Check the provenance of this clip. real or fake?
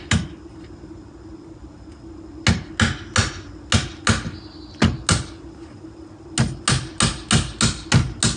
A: real